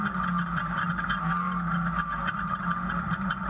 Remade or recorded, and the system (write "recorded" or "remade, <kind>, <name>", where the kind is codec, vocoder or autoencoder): recorded